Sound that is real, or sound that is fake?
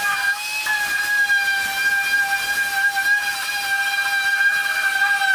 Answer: real